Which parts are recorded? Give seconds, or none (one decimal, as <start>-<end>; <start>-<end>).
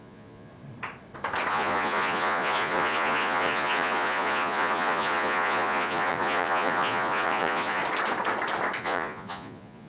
0.5-1.5; 7.8-8.8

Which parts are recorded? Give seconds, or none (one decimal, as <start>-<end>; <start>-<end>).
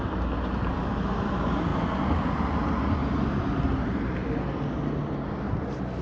0.0-6.0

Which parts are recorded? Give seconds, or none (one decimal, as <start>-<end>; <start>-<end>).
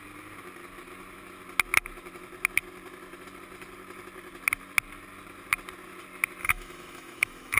0.0-6.4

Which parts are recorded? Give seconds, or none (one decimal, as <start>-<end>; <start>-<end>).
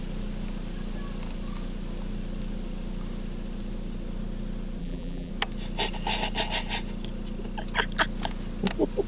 0.0-4.8; 5.3-9.1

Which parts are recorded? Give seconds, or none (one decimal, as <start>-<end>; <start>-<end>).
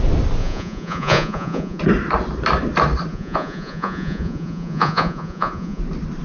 0.0-0.4; 1.8-3.1; 5.8-6.2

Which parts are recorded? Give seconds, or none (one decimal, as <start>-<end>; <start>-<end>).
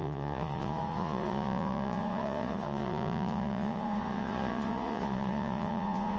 none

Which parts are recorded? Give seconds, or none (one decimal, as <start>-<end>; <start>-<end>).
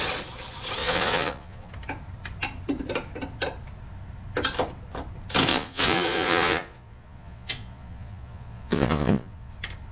0.0-0.8; 1.7-5.5; 9.5-9.9